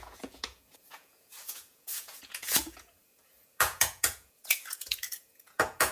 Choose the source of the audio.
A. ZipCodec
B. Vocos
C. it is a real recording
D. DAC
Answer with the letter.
B